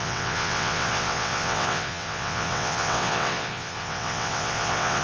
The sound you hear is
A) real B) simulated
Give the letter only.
B